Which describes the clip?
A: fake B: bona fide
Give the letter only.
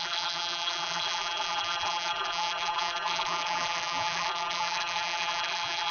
A